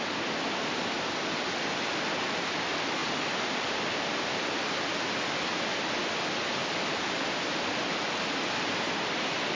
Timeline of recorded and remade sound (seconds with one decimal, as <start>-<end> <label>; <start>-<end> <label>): 0.0-9.6 recorded